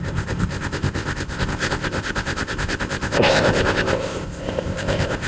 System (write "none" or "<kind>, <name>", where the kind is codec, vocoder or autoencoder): codec, ZipCodec